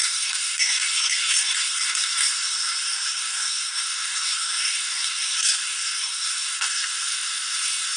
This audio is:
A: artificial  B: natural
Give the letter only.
A